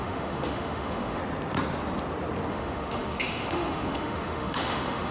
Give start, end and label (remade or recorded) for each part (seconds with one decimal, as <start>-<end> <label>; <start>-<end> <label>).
0.0-1.2 remade; 1.2-2.5 recorded; 2.5-5.1 remade